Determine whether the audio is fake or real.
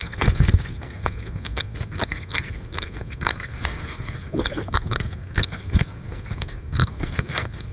fake